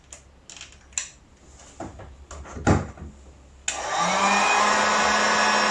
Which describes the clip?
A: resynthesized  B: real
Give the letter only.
B